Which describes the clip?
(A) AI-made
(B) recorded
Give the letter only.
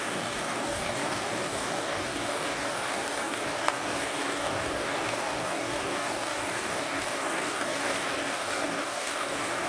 A